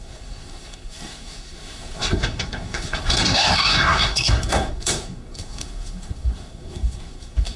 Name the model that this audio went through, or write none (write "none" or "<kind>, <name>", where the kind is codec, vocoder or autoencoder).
codec, SNAC